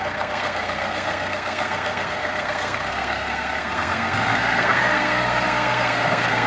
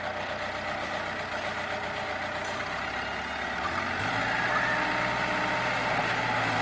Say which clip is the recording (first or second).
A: second